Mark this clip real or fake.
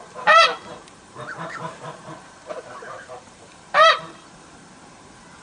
fake